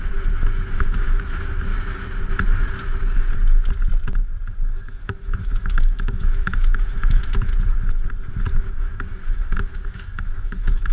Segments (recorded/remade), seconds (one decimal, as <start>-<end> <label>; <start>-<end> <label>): 0.0-1.7 remade; 1.7-4.7 recorded; 4.7-7.5 remade; 7.5-8.6 recorded; 8.6-10.9 remade